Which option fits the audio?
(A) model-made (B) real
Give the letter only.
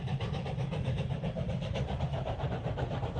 A